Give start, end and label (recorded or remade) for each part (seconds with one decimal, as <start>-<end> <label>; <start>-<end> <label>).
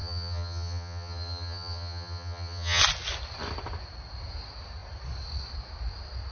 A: 0.0-2.8 remade; 2.8-6.3 recorded